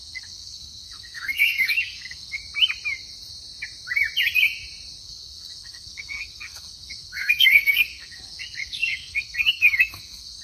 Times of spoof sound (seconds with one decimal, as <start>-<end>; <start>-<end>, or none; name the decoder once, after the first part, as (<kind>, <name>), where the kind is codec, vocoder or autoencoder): 0.0-2.4 (codec, SNAC); 5.0-10.4